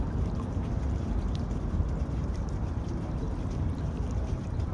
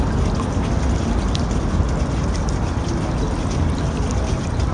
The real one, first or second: second